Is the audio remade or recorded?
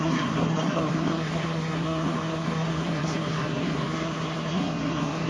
remade